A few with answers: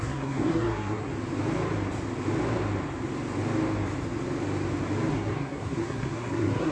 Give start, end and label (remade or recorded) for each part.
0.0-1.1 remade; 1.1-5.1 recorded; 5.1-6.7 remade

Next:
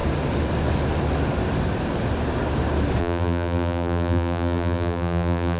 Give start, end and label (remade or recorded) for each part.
0.0-3.0 recorded; 3.0-5.6 remade

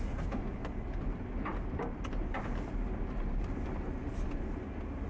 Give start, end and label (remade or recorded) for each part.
0.0-5.1 recorded

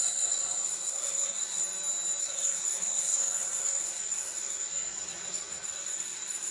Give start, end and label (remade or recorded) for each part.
0.0-1.6 remade; 1.6-2.2 recorded; 2.2-6.5 remade

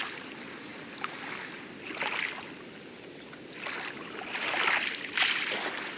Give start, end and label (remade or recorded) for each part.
0.0-6.0 recorded